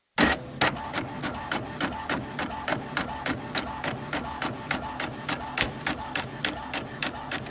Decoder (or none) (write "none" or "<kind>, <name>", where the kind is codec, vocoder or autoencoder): none